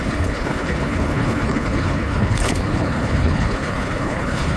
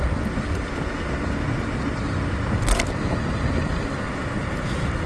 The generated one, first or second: first